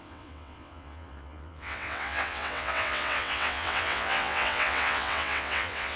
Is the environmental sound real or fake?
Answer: fake